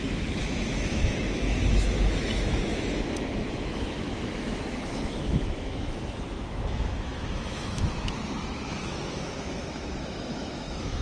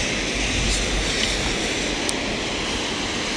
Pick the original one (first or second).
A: second